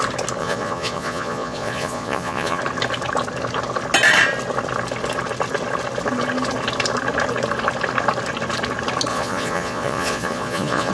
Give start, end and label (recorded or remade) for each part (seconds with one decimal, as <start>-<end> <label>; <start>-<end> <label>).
0.0-0.4 recorded; 0.4-2.6 remade; 2.6-9.1 recorded; 9.1-10.9 remade